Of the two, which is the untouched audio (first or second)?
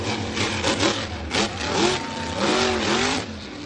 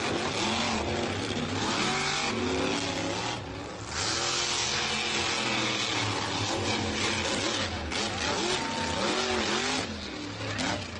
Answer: second